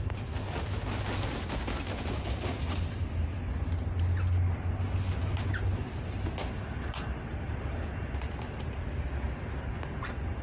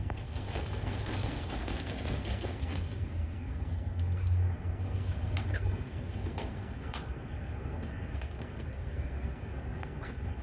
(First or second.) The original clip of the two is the first